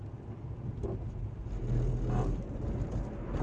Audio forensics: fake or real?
real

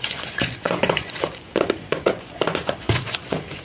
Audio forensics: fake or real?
fake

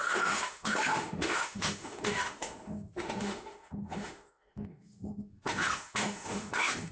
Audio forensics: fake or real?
fake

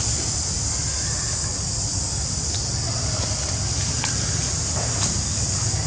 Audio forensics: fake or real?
real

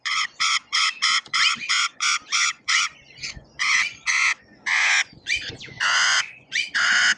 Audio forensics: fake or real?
fake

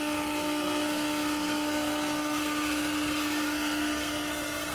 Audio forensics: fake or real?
fake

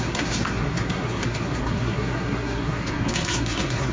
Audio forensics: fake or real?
fake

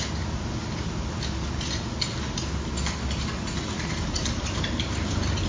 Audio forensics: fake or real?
real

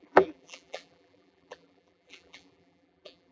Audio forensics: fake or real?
fake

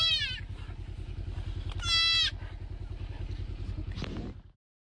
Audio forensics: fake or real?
real